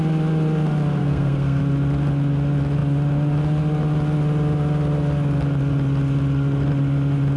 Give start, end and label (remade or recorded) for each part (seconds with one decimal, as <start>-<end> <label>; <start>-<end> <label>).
0.0-1.0 recorded; 1.0-1.6 remade; 1.6-7.4 recorded